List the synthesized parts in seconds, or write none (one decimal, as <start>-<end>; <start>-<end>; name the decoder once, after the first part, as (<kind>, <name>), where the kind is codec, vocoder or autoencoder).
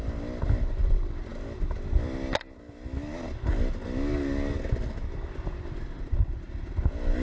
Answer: 0.0-1.3 (vocoder, BigVGAN v2); 5.6-7.2